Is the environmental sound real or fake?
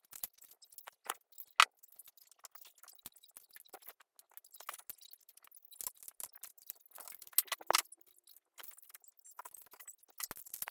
real